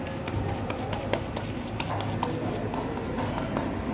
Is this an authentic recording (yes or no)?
yes